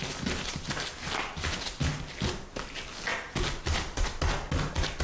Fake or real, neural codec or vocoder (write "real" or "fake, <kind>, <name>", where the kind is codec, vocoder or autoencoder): real